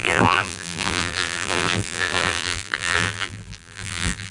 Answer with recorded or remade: remade